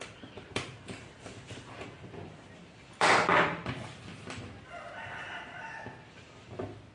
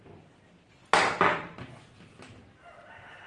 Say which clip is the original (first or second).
second